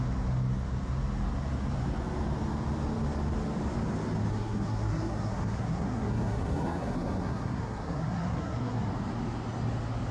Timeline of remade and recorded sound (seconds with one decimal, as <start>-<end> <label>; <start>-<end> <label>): 0.0-4.3 recorded; 4.3-8.9 remade; 8.9-10.1 recorded